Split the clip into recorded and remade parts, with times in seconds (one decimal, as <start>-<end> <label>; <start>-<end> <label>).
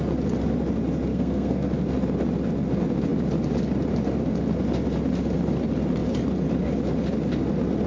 0.0-1.1 recorded; 1.1-1.7 remade; 1.7-7.9 recorded